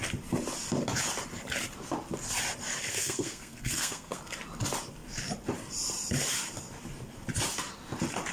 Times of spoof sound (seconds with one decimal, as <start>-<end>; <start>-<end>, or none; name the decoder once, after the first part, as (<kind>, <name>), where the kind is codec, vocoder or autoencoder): 2.9-4.2 (codec, SNAC)